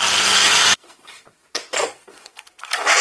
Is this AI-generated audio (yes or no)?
yes